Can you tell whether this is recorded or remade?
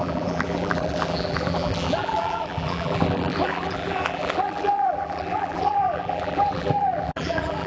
remade